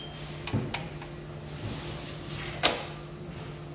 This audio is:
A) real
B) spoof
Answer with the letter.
A